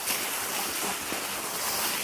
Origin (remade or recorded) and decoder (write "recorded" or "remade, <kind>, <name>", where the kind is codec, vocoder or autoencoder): recorded